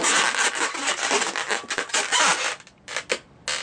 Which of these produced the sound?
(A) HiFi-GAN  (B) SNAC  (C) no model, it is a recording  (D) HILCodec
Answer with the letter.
C